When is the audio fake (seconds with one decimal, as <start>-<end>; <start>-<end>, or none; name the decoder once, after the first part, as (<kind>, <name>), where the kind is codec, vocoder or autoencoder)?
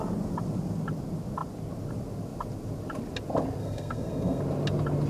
3.6-4.4 (codec, SNAC)